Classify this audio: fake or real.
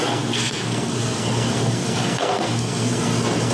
fake